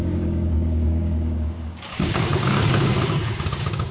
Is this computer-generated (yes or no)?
yes